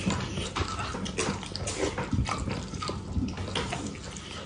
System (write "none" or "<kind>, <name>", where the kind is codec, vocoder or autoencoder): none